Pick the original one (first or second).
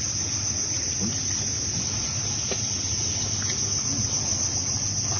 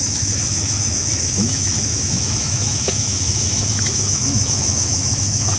first